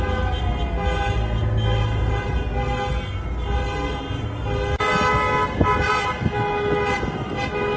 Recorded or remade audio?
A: recorded